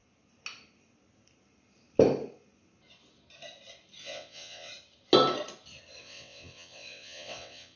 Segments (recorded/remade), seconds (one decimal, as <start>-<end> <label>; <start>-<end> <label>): 0.0-4.0 recorded; 4.0-4.7 remade; 4.7-6.0 recorded; 6.0-7.8 remade